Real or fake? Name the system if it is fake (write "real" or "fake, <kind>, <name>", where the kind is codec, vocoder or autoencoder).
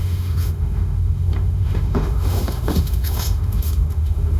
fake, autoencoder, DAC-VAE